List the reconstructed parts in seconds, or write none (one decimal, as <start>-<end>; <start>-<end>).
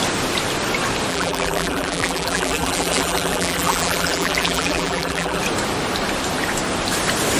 1.1-5.4